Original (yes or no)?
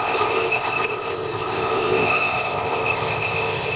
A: no